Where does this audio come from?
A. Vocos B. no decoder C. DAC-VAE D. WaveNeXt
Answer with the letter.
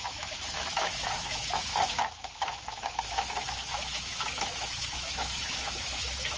C